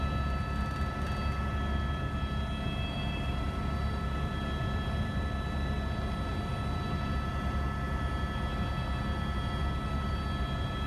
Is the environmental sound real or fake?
real